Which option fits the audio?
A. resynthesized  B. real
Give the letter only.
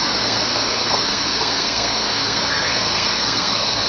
A